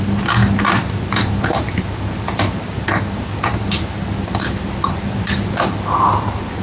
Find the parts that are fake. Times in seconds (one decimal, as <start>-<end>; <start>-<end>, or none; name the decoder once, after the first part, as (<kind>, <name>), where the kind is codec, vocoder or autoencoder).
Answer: none